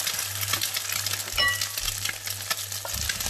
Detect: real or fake real